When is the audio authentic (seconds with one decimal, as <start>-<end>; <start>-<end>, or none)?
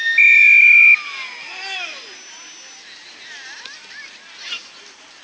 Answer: 0.0-5.2